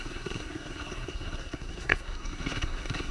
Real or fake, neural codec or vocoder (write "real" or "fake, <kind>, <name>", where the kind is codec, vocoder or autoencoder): fake, codec, SNAC